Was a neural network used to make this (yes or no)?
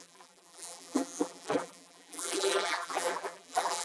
yes